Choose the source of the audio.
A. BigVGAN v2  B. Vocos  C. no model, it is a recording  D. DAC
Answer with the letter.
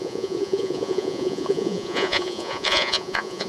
B